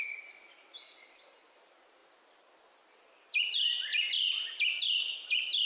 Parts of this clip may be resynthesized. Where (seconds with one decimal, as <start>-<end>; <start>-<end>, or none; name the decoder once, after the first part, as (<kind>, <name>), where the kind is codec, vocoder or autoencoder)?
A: none